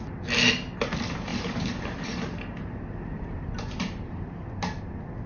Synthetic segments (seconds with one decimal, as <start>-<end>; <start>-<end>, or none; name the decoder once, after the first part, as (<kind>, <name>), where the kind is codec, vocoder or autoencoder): 1.3-4.5 (vocoder, BigVGAN v2)